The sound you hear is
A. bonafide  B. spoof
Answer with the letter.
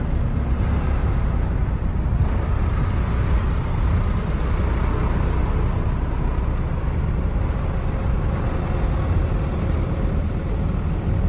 A